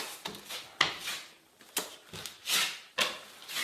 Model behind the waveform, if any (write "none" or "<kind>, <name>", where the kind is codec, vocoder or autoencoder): none